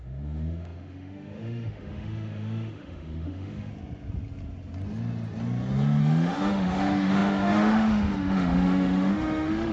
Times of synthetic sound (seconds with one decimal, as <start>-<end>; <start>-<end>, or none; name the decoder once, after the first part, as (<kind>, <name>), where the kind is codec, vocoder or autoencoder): 0.0-3.7 (autoencoder, DAC-VAE); 6.0-9.7